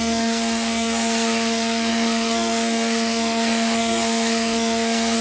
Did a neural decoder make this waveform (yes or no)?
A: yes